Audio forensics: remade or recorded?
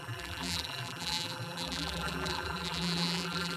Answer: remade